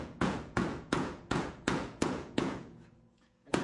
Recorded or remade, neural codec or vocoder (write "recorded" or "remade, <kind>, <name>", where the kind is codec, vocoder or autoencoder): remade, vocoder, Vocos